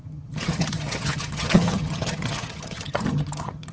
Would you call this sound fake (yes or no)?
yes